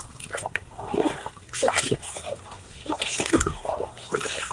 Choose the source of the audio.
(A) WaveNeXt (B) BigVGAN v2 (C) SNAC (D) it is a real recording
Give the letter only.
C